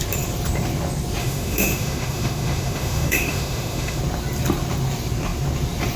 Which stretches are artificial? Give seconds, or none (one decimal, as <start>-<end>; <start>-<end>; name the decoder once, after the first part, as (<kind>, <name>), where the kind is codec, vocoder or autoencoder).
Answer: 1.2-4.0 (autoencoder, DAC-VAE)